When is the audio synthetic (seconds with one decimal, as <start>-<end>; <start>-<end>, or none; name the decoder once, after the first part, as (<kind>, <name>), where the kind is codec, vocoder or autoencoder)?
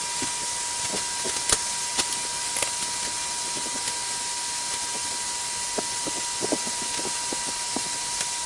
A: none